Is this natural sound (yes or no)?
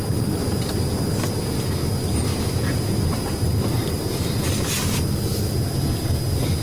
yes